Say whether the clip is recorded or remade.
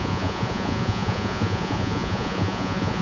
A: remade